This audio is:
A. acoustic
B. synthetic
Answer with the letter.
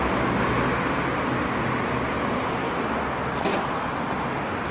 A